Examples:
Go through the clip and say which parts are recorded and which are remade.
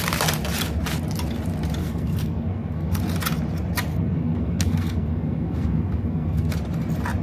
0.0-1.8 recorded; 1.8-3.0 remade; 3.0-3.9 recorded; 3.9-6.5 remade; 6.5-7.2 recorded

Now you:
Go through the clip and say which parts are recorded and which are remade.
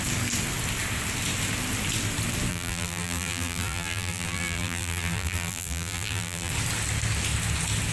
0.0-2.5 recorded; 2.5-6.5 remade; 6.5-7.9 recorded